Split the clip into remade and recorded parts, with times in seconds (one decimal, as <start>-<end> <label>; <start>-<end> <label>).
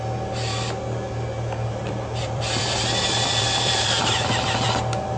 0.0-1.8 recorded; 1.8-5.2 remade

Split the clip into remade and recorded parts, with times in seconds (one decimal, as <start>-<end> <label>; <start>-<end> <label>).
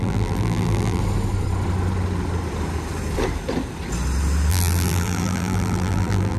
0.0-1.0 remade; 1.0-4.5 recorded; 4.5-6.4 remade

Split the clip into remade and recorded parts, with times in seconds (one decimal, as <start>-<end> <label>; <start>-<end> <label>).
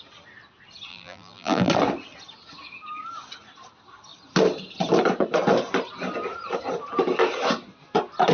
0.0-0.9 recorded; 0.9-1.7 remade; 1.7-8.3 recorded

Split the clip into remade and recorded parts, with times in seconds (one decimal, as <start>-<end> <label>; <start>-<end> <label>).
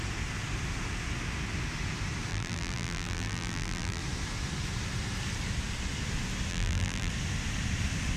0.0-2.3 recorded; 2.3-4.0 remade; 4.0-6.5 recorded; 6.5-7.1 remade; 7.1-8.2 recorded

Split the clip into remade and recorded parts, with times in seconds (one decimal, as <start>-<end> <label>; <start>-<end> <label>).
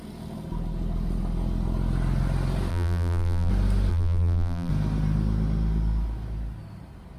0.0-2.7 recorded; 2.7-3.5 remade; 3.5-3.9 recorded; 3.9-4.7 remade; 4.7-7.2 recorded